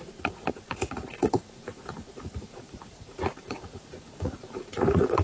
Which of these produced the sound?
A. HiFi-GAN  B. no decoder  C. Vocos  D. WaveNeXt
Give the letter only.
C